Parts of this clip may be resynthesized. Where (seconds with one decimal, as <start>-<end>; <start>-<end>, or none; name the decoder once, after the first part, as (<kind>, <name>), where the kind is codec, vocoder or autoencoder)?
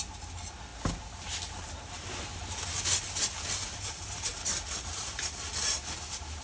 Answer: none